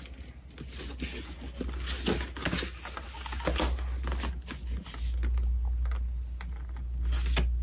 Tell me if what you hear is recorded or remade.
recorded